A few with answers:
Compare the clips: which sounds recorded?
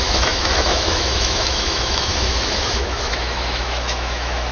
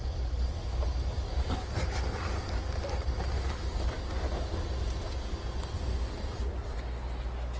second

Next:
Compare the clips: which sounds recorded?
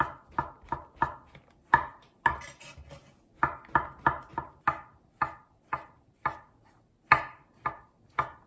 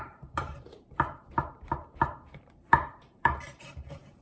first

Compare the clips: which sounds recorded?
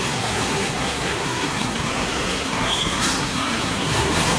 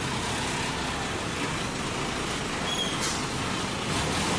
second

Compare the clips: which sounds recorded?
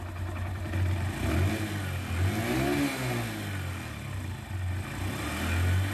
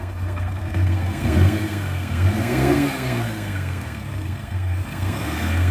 first